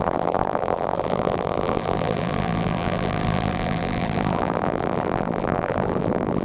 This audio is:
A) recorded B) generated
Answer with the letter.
B